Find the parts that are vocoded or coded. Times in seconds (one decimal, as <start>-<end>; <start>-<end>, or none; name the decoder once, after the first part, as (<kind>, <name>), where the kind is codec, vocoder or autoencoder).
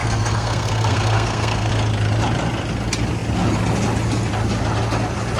0.0-1.7 (codec, SNAC)